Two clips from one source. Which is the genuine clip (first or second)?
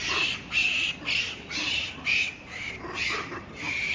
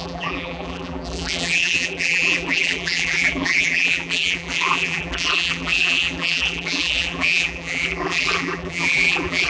first